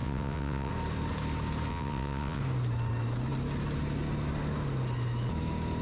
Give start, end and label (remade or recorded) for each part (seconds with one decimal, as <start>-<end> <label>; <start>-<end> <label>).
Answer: 0.0-0.7 remade; 0.7-1.7 recorded; 1.7-2.4 remade; 2.4-5.8 recorded

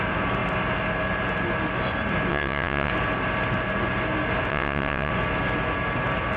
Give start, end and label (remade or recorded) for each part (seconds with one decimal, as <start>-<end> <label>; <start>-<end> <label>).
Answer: 0.0-2.3 recorded; 2.3-2.9 remade; 2.9-4.5 recorded; 4.5-5.1 remade; 5.1-6.4 recorded

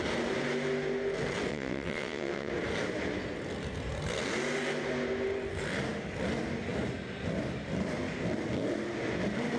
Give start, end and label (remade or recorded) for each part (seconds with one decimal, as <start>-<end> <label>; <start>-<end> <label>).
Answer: 0.0-1.5 recorded; 1.5-2.5 remade; 2.5-9.6 recorded

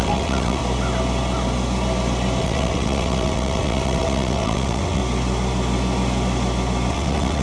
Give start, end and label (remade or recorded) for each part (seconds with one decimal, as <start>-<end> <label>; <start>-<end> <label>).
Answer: 0.0-0.6 remade; 0.6-2.4 recorded; 2.4-5.0 remade; 5.0-6.9 recorded; 6.9-7.4 remade

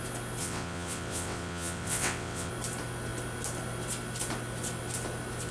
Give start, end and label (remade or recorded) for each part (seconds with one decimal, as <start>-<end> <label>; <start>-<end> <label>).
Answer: 0.0-0.4 recorded; 0.4-2.5 remade; 2.5-5.5 recorded